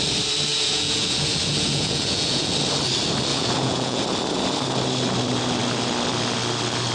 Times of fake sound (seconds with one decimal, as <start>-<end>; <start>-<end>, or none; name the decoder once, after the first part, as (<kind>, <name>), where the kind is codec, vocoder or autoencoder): 0.5-2.5 (vocoder, Vocos); 3.3-4.0